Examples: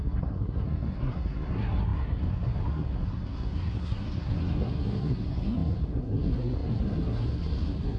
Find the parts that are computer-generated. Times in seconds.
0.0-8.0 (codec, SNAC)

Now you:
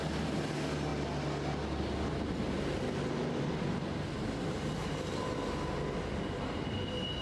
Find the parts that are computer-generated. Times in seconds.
none

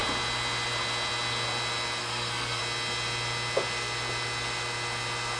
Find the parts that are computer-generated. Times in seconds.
2.0-2.6 (codec, SNAC)

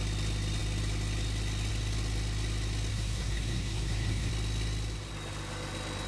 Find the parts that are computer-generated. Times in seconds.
2.9-4.3 (codec, SNAC)

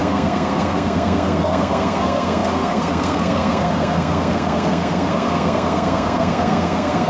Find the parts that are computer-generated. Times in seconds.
0.0-7.1 (codec, SNAC)